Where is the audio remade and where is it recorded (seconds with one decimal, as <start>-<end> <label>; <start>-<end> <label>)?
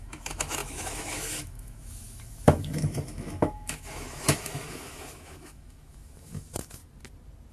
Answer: 0.0-6.8 remade; 6.8-7.5 recorded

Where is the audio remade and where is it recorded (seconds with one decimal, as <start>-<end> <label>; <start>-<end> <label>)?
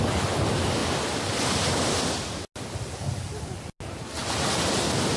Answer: 0.0-5.2 recorded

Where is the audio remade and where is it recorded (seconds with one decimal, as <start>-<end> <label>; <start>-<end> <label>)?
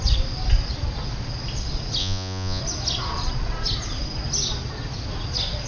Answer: 0.0-2.0 recorded; 2.0-2.6 remade; 2.6-5.7 recorded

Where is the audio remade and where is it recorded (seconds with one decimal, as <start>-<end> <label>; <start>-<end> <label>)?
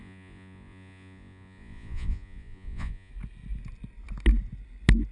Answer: 0.0-3.1 remade; 3.1-5.1 recorded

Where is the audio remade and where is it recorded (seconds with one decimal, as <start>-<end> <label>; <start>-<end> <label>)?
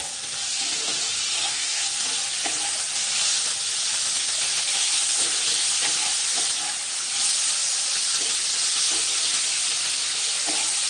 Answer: 0.0-1.3 recorded; 1.3-1.8 remade; 1.8-4.8 recorded; 4.8-5.4 remade; 5.4-10.9 recorded